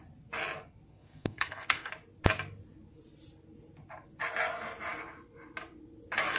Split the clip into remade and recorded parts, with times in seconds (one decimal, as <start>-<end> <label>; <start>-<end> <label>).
0.0-0.9 recorded; 0.9-1.9 remade; 1.9-6.4 recorded

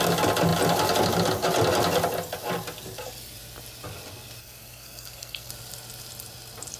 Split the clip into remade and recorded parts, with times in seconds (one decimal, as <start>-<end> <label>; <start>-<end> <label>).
0.0-4.4 recorded; 4.4-5.5 remade; 5.5-6.8 recorded

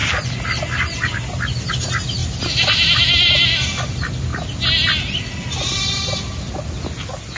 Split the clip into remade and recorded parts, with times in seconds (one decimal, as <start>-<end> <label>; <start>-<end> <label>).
0.0-7.4 recorded

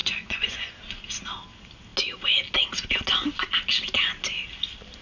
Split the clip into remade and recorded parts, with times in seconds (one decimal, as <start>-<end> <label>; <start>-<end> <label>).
0.0-0.8 remade; 0.8-5.0 recorded